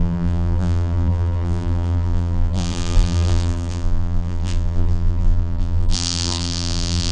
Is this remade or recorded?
remade